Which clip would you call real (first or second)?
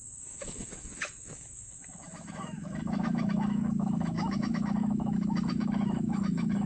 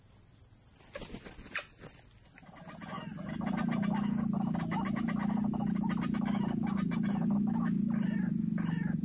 second